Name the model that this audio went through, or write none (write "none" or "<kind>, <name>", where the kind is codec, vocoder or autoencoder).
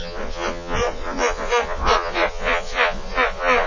vocoder, Vocos